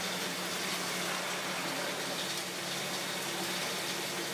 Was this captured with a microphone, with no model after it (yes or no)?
yes